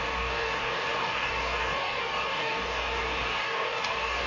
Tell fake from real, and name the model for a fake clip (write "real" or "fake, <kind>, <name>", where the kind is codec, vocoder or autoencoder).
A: fake, codec, DAC